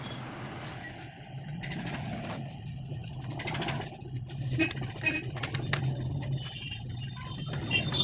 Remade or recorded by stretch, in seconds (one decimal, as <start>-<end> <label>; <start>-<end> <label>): 0.0-8.0 recorded